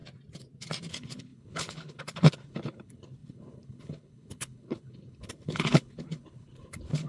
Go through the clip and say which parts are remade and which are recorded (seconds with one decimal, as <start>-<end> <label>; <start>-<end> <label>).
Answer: 0.0-0.9 recorded; 0.9-7.1 remade